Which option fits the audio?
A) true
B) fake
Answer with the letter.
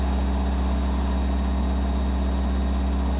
A